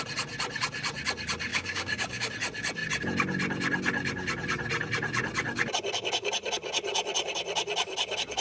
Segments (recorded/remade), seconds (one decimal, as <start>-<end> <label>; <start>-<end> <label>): 0.0-1.5 recorded; 1.5-2.3 remade; 2.3-8.4 recorded